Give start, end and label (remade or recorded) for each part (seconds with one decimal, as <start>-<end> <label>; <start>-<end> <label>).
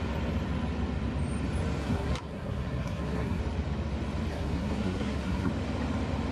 0.0-1.8 recorded; 1.8-3.4 remade; 3.4-4.3 recorded; 4.3-5.5 remade; 5.5-6.3 recorded